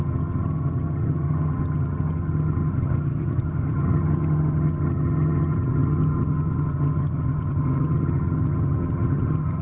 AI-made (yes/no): yes